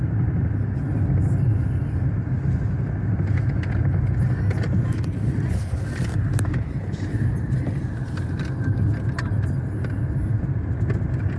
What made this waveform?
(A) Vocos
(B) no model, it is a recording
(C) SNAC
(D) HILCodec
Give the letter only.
B